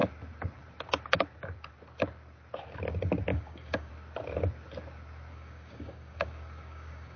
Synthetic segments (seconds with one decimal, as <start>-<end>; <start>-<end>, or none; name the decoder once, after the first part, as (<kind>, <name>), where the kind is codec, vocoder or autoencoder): 3.3-3.9 (codec, DAC); 5.3-7.2